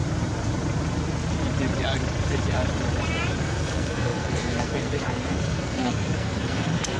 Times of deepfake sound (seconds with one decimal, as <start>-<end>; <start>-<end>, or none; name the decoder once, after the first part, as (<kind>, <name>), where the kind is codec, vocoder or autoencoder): 3.4-7.0 (codec, SNAC)